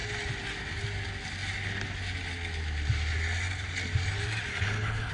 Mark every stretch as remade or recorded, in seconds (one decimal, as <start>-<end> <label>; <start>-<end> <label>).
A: 0.0-4.5 recorded; 4.5-5.1 remade